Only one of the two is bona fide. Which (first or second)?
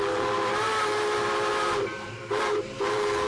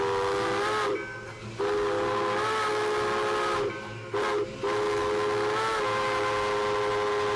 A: second